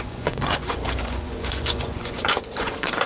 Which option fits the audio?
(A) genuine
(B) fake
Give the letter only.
B